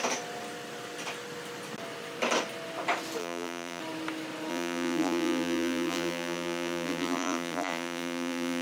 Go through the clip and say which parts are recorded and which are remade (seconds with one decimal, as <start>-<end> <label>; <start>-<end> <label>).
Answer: 0.0-3.2 recorded; 3.2-3.8 remade; 3.8-4.5 recorded; 4.5-8.6 remade